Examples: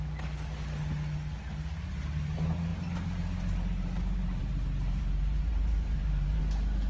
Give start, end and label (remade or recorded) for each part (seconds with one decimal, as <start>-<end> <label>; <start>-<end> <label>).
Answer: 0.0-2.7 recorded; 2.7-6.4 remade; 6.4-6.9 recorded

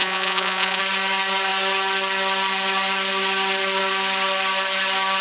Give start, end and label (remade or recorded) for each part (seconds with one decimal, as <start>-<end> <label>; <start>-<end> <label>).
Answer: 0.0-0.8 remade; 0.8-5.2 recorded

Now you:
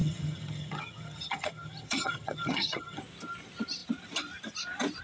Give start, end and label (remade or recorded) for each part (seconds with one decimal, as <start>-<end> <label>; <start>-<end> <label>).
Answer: 0.0-3.0 remade; 3.0-5.0 recorded

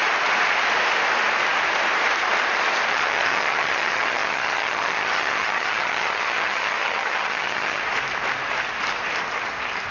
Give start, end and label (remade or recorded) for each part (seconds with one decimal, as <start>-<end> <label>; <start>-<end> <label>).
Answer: 0.0-2.9 recorded; 2.9-7.8 remade; 7.8-9.9 recorded

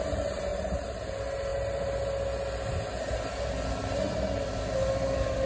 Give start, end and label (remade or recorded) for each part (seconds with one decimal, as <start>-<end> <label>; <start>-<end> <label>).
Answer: 0.0-5.5 recorded